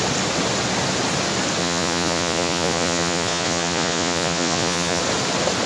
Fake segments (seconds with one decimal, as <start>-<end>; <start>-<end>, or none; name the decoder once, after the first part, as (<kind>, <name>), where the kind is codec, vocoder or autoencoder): 1.6-5.0 (vocoder, Vocos)